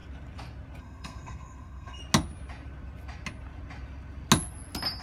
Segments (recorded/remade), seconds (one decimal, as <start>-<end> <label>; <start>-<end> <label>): 0.0-0.8 recorded; 0.8-2.0 remade; 2.0-5.0 recorded